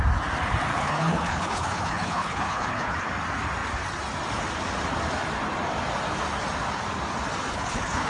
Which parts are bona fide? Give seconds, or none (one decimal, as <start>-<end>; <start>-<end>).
0.0-0.7; 3.1-7.5